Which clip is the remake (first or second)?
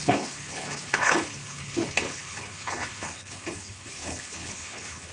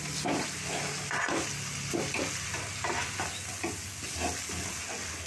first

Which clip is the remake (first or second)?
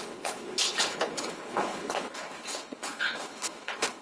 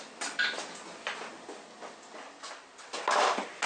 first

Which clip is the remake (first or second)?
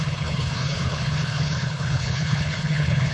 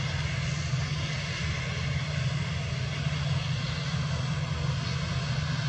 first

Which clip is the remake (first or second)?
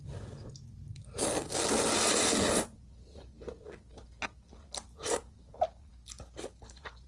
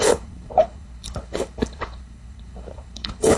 second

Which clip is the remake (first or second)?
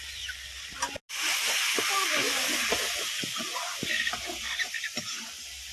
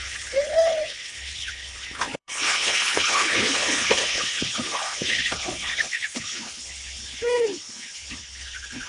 second